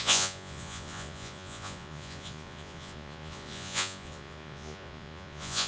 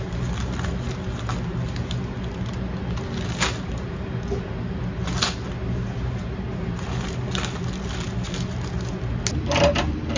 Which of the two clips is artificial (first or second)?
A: first